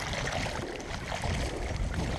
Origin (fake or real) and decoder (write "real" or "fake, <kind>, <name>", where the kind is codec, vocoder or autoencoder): real